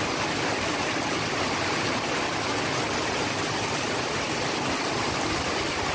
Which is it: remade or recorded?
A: recorded